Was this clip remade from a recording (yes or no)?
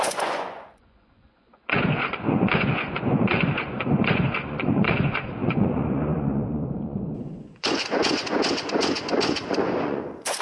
yes